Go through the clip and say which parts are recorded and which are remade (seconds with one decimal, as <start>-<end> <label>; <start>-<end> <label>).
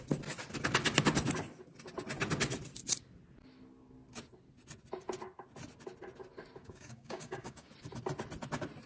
0.0-6.6 recorded; 6.6-7.7 remade; 7.7-8.9 recorded